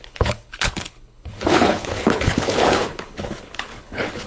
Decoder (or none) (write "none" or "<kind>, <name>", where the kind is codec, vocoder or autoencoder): codec, HILCodec